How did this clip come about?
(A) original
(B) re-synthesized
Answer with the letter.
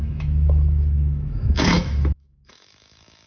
B